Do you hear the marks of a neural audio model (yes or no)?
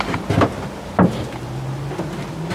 no